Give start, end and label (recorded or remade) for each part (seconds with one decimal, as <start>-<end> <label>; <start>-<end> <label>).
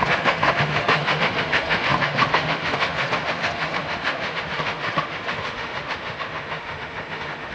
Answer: 0.0-7.5 remade